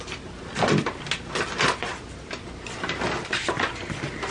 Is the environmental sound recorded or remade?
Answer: recorded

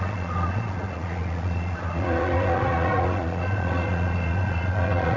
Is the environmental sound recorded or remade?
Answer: remade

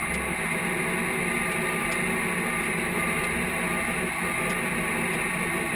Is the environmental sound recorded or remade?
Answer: recorded